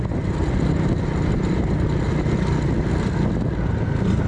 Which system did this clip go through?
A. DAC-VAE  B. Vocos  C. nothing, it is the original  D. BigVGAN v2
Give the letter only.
C